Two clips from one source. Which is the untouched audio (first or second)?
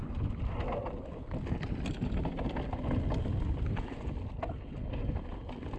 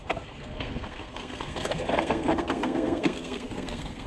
first